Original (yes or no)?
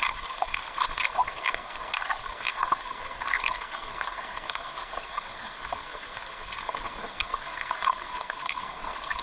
no